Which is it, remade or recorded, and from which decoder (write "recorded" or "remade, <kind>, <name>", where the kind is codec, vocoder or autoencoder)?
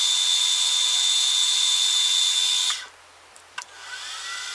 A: recorded